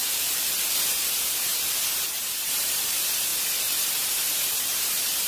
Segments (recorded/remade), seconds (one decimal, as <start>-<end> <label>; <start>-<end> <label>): 0.0-1.5 remade; 1.5-2.5 recorded; 2.5-5.3 remade